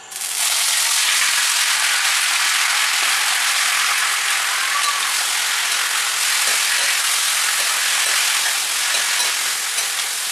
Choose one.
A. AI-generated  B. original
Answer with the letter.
B